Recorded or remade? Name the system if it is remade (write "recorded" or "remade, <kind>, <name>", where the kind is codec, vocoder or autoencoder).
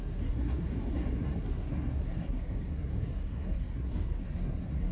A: remade, codec, SNAC